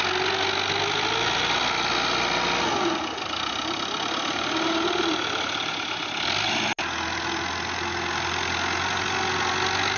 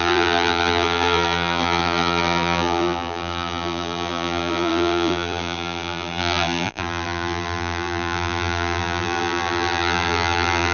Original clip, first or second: first